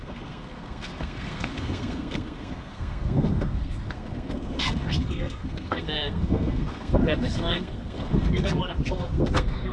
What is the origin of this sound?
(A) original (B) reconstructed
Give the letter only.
B